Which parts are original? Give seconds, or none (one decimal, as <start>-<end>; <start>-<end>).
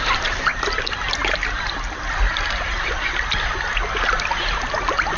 0.0-5.2